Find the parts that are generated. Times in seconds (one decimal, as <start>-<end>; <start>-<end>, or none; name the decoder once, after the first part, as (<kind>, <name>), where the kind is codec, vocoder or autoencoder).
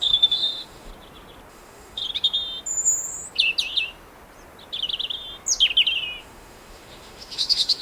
0.0-0.9 (autoencoder, DAC-VAE); 1.5-2.0; 6.2-7.8